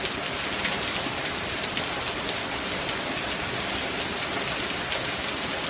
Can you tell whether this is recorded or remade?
recorded